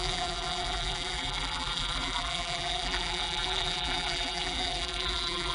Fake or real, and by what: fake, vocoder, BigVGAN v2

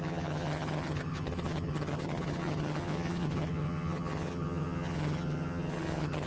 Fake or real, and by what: fake, vocoder, HiFi-GAN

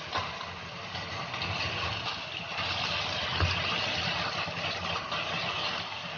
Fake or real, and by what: real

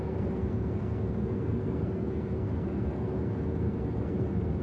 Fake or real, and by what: fake, codec, SNAC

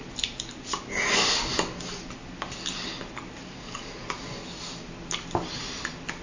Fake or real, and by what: real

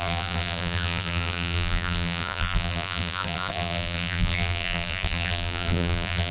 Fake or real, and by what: fake, vocoder, BigVGAN v2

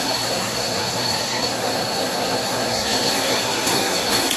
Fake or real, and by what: fake, codec, SNAC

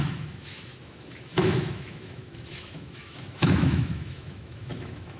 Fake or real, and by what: fake, autoencoder, DAC-VAE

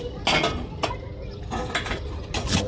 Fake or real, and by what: real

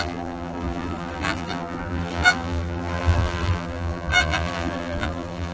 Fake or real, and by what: fake, vocoder, BigVGAN v2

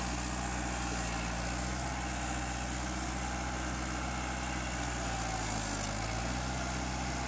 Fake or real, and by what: real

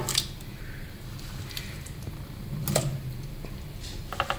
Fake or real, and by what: real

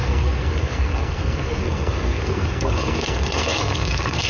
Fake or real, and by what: fake, codec, SNAC